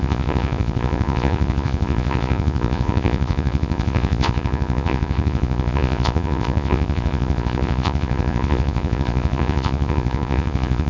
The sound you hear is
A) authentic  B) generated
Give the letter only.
B